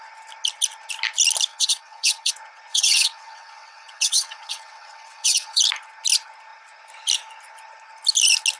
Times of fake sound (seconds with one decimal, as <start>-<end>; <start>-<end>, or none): 1.5-2.3; 2.7-5.6

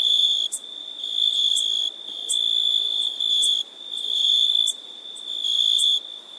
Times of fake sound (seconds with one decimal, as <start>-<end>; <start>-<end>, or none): none

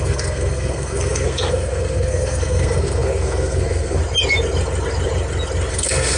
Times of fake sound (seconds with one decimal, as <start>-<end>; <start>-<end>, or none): 0.0-4.0; 5.7-6.2